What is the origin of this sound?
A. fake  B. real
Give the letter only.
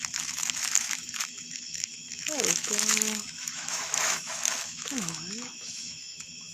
A